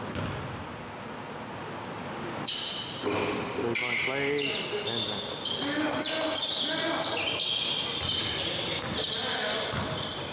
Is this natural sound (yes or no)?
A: yes